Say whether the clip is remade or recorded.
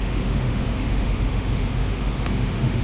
remade